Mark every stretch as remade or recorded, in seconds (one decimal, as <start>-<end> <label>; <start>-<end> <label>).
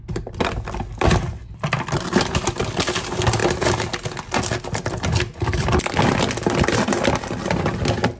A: 0.0-8.2 recorded